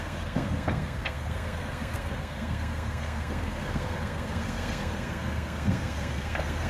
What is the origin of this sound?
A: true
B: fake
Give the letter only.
B